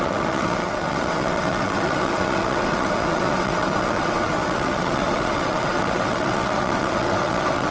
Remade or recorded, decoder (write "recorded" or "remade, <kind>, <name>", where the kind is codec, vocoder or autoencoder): remade, vocoder, WaveNeXt